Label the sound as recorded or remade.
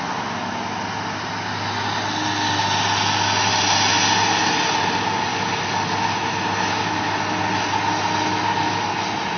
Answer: recorded